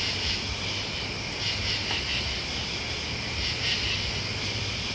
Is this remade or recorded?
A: remade